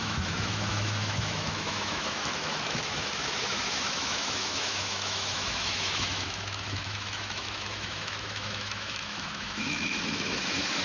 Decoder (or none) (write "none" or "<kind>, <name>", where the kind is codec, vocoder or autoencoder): autoencoder, DAC-VAE